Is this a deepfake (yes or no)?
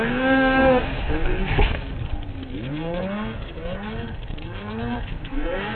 yes